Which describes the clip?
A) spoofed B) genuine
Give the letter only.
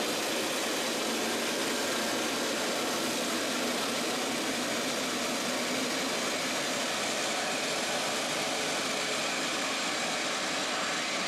A